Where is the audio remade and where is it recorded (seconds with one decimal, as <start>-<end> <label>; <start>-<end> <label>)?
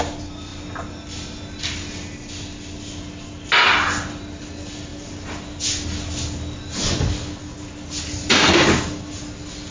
0.0-9.7 recorded